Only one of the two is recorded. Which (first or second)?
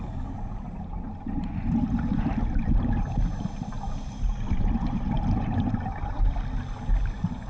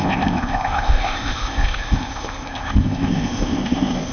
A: first